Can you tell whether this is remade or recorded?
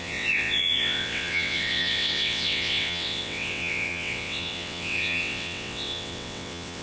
remade